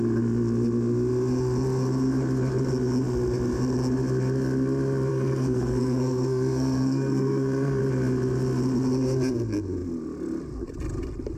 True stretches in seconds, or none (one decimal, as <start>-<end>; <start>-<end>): 0.0-5.1; 7.8-11.4